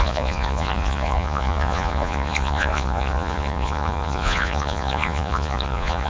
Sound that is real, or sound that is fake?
fake